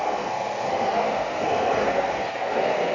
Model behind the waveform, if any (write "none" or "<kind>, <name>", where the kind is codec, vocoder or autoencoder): codec, SNAC